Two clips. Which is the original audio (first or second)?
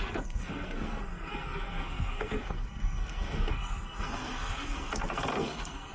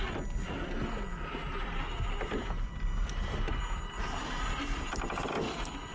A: second